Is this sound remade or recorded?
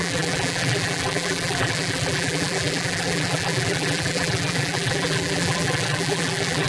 remade